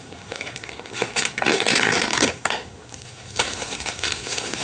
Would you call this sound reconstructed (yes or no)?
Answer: yes